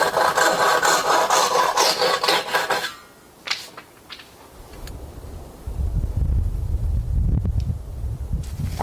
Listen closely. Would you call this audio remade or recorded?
remade